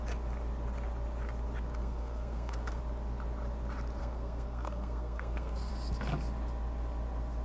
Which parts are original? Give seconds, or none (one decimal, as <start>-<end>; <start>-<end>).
0.0-1.8; 2.8-4.0; 5.7-7.4